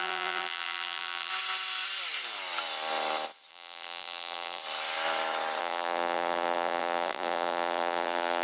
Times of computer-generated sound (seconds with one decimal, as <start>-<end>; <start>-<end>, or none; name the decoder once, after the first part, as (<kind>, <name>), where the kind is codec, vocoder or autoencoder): 0.0-1.3 (vocoder, BigVGAN v2); 3.5-4.6; 5.6-8.4